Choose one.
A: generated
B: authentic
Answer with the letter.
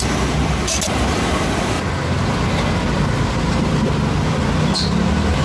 B